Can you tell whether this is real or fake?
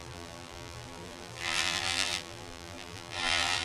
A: fake